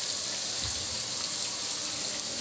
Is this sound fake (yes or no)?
no